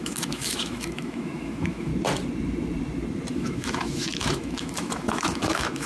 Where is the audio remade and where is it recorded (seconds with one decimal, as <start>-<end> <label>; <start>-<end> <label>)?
0.0-1.9 remade; 1.9-3.3 recorded; 3.3-5.9 remade